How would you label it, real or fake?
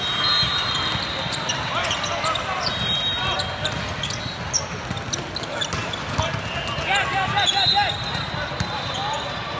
real